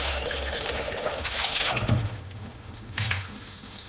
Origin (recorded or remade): remade